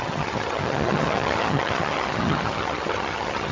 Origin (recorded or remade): remade